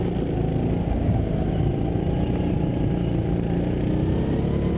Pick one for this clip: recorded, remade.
recorded